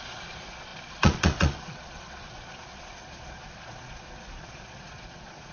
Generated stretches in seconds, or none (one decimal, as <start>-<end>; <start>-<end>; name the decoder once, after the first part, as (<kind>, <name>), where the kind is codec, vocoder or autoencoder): 0.0-5.5 (vocoder, Vocos)